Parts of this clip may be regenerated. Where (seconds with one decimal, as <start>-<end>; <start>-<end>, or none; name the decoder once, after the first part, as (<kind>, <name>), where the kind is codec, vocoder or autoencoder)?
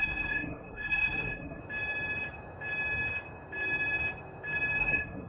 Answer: 0.0-1.6 (codec, SNAC); 4.8-5.3